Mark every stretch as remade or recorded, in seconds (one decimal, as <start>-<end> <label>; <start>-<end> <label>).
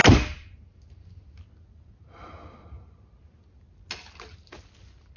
0.0-5.2 recorded